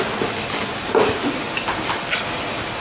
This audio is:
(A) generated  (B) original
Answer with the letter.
B